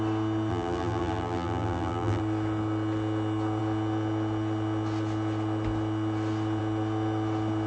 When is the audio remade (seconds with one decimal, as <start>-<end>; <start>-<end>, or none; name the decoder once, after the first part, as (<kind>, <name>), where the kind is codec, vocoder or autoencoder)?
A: 0.5-2.2 (vocoder, BigVGAN v2)